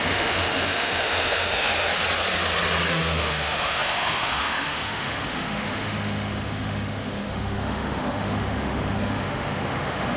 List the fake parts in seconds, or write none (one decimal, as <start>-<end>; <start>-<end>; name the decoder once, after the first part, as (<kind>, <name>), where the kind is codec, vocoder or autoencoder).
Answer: 0.0-1.9 (autoencoder, DAC-VAE); 2.9-10.2